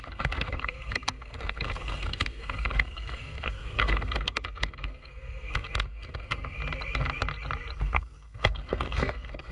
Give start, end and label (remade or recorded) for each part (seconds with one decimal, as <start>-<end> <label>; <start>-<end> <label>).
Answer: 0.0-6.6 remade; 6.6-7.8 recorded; 7.8-9.5 remade